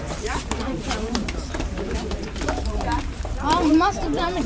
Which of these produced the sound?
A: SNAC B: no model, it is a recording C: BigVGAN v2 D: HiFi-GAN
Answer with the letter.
C